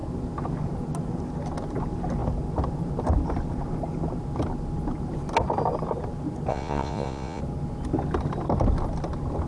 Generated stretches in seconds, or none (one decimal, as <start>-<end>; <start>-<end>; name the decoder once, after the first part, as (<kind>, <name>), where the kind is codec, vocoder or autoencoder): 6.5-7.4 (vocoder, Vocos)